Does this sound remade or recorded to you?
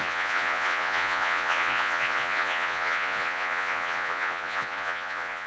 remade